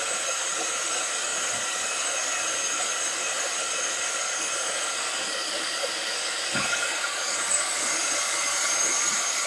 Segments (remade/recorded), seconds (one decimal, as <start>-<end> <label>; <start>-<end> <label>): 0.0-9.5 remade